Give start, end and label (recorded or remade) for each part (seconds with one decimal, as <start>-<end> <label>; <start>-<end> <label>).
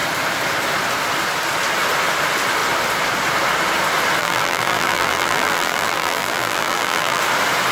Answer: 0.0-4.2 recorded; 4.2-7.2 remade; 7.2-7.7 recorded